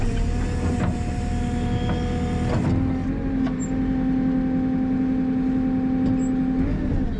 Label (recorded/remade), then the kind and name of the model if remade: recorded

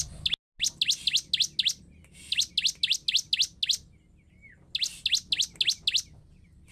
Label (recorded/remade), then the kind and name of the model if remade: recorded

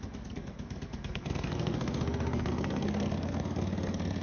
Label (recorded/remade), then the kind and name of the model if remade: remade, codec, SNAC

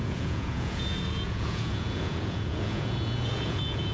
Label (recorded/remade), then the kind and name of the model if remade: remade, vocoder, Vocos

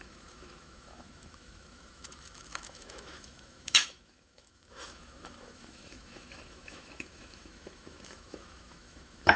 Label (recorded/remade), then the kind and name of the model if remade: remade, autoencoder, DAC-VAE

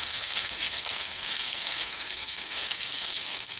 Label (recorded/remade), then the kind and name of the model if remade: remade, codec, SNAC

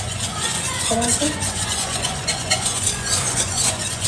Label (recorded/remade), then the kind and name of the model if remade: remade, vocoder, Vocos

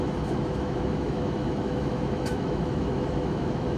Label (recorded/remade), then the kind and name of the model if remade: remade, autoencoder, DAC-VAE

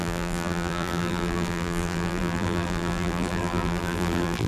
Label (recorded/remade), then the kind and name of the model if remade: remade, vocoder, BigVGAN v2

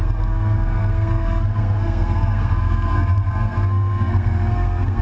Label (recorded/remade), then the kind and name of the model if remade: remade, codec, SNAC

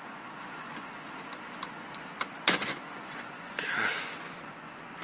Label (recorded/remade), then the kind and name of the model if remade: remade, vocoder, Vocos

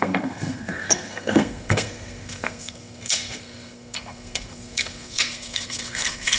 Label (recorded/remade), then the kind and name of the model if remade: remade, codec, SNAC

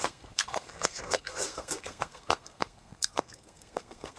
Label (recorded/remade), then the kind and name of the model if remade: remade, codec, SNAC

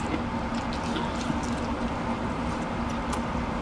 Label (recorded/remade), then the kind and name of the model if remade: recorded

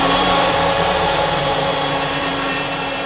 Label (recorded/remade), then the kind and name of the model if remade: remade, vocoder, BigVGAN v2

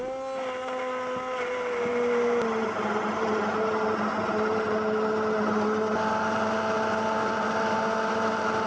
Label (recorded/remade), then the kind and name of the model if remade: recorded